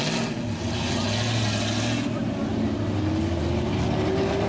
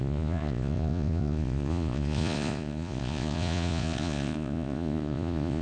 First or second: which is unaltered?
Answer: first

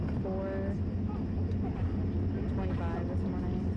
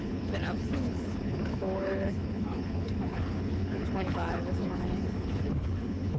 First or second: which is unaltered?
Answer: first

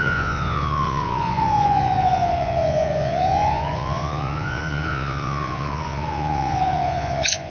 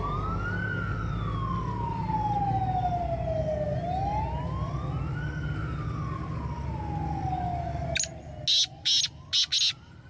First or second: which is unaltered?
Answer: second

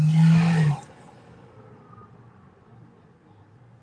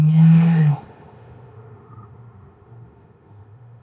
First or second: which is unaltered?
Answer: first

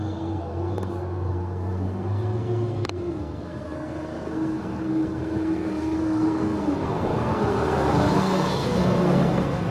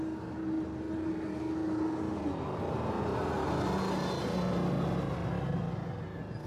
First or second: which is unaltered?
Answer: second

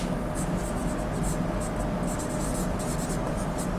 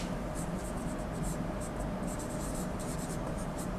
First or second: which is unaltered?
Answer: first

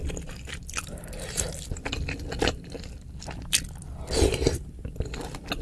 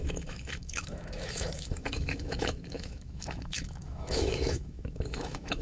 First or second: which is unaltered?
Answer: first